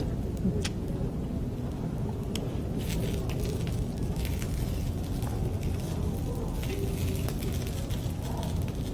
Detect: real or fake real